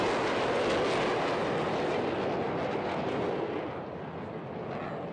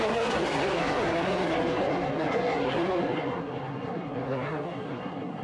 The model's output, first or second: second